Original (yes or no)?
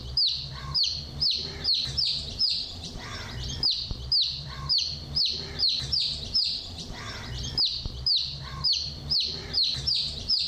no